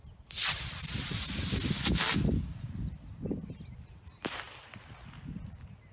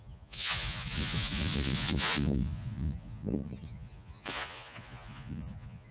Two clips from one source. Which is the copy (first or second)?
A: second